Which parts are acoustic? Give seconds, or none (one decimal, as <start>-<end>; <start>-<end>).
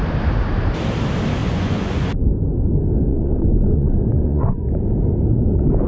0.0-1.4; 2.1-3.1; 4.6-5.9